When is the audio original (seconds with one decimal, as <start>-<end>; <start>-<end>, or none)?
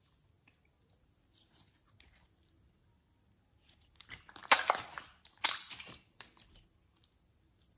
0.0-7.8